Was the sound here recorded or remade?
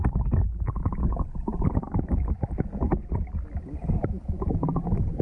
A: recorded